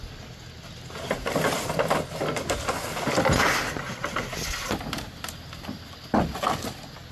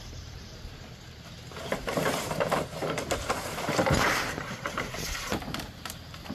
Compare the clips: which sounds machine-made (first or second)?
second